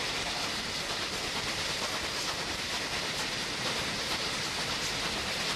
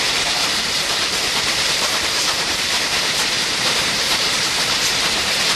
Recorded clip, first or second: first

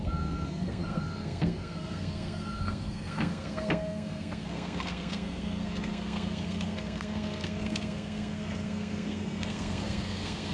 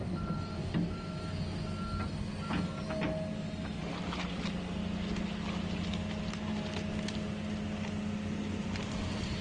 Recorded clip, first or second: second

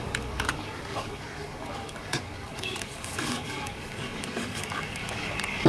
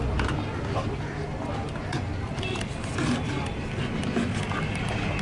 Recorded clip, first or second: second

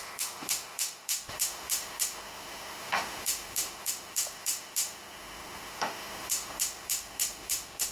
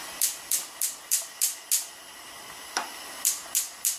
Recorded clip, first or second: second